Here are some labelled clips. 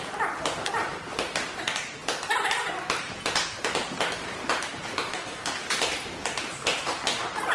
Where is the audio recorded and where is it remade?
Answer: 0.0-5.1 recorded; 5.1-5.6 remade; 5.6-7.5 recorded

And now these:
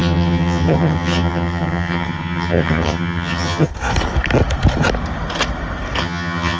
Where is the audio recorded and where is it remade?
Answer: 0.0-3.7 remade; 3.7-6.0 recorded; 6.0-6.6 remade